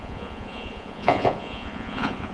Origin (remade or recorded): remade